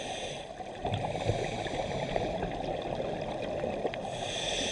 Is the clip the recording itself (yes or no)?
yes